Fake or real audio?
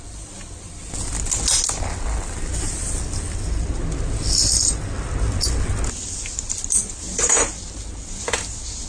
real